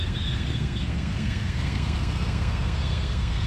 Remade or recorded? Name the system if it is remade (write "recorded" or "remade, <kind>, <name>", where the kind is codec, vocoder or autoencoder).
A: remade, codec, SNAC